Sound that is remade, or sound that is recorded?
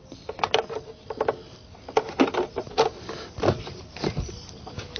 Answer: recorded